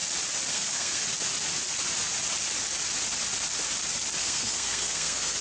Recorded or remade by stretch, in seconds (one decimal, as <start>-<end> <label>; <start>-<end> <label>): 0.0-0.5 recorded; 0.5-1.0 remade; 1.0-4.2 recorded; 4.2-5.4 remade